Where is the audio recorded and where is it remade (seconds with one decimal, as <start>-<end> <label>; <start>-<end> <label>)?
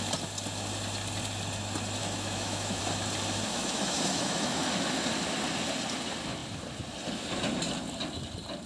0.0-2.0 recorded; 2.0-2.8 remade; 2.8-3.5 recorded; 3.5-4.6 remade; 4.6-8.7 recorded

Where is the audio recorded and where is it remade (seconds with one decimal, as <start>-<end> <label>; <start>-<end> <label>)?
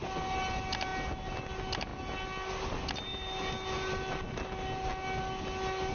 0.0-5.9 recorded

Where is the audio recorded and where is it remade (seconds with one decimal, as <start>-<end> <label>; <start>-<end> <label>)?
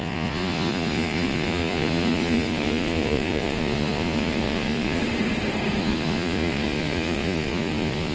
0.0-5.0 remade; 5.0-5.8 recorded; 5.8-8.1 remade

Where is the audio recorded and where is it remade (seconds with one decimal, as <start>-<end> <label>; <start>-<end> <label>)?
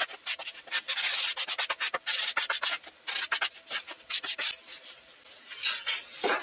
0.0-6.4 recorded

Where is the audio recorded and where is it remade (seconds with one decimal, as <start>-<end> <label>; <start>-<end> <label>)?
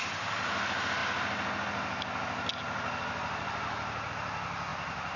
0.0-5.2 recorded